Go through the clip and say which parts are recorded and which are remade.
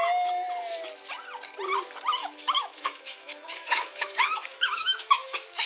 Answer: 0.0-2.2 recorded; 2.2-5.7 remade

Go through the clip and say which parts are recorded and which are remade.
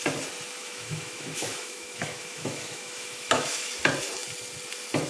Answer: 0.0-0.6 recorded; 0.6-3.7 remade; 3.7-5.1 recorded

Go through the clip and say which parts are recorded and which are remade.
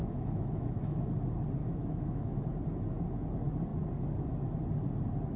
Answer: 0.0-1.0 remade; 1.0-1.6 recorded; 1.6-2.4 remade; 2.4-5.4 recorded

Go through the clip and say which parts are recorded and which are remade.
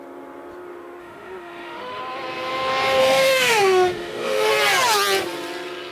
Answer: 0.0-1.0 recorded; 1.0-2.0 remade; 2.0-3.0 recorded; 3.0-4.5 remade; 4.5-5.9 recorded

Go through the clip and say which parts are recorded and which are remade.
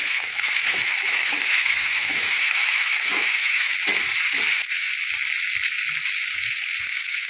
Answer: 0.0-3.7 remade; 3.7-4.5 recorded; 4.5-4.9 remade; 4.9-6.8 recorded; 6.8-7.3 remade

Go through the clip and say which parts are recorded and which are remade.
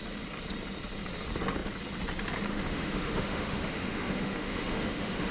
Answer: 0.0-2.5 recorded; 2.5-5.3 remade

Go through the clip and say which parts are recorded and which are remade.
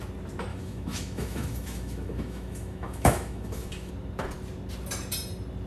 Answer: 0.0-0.5 recorded; 0.5-3.9 remade; 3.9-5.7 recorded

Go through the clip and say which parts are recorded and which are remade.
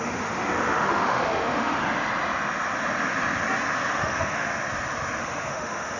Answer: 0.0-1.8 remade; 1.8-3.9 recorded; 3.9-4.5 remade; 4.5-5.2 recorded; 5.2-6.0 remade